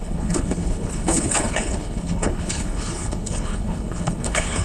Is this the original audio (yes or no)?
no